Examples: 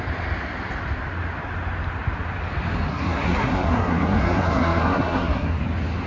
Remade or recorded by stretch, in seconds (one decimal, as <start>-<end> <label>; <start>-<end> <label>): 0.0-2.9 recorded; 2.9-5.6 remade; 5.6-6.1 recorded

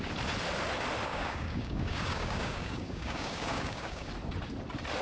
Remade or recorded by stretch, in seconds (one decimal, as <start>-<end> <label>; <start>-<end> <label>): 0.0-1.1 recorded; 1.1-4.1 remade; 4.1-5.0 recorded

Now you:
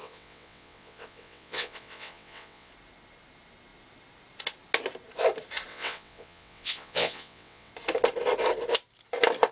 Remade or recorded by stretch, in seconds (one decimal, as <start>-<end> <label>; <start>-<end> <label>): 0.0-2.7 remade; 2.7-5.7 recorded; 5.7-7.7 remade; 7.7-9.5 recorded

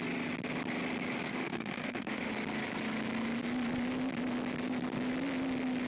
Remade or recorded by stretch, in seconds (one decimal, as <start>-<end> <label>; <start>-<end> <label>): 0.0-1.3 recorded; 1.3-2.3 remade; 2.3-5.9 recorded

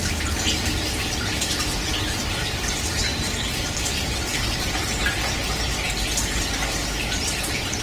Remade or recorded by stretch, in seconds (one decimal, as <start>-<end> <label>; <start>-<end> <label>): 0.0-7.8 recorded

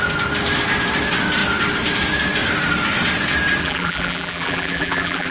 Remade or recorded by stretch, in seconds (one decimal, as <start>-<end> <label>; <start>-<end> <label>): 0.0-3.6 recorded; 3.6-5.3 remade